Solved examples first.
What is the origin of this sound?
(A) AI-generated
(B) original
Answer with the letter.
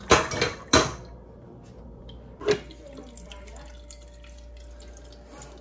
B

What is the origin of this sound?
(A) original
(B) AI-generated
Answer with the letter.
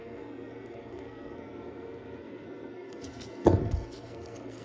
B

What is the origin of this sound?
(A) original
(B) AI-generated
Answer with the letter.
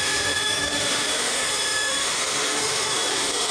B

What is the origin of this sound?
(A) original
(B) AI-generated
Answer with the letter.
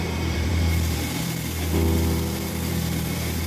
B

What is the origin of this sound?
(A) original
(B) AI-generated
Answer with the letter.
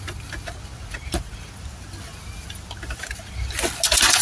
A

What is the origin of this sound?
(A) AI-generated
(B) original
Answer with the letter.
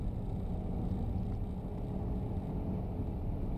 B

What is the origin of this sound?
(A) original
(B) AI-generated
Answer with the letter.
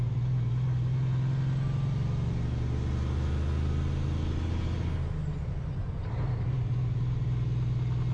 A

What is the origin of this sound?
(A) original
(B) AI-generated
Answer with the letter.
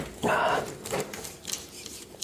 B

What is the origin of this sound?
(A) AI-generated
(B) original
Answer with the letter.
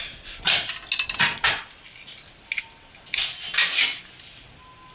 B